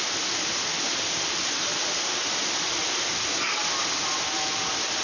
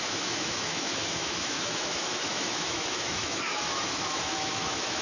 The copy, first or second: second